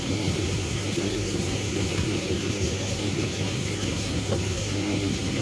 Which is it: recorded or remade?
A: remade